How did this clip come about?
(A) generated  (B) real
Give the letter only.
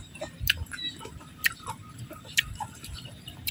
A